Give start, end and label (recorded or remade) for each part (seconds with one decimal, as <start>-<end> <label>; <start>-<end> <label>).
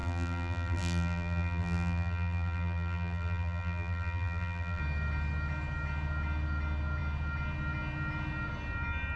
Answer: 0.0-4.8 remade; 4.8-9.2 recorded